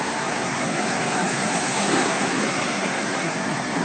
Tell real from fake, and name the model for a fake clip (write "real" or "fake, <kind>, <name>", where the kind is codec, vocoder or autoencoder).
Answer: fake, codec, SNAC